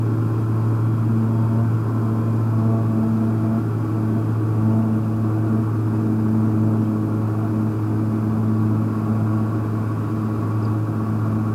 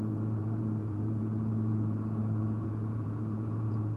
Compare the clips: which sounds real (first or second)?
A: first